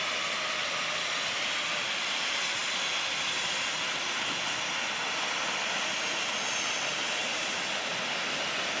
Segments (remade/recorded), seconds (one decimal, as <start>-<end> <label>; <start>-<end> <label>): 0.0-8.8 recorded